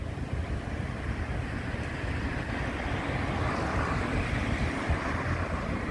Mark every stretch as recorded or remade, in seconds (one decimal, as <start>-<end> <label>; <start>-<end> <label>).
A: 0.0-5.9 recorded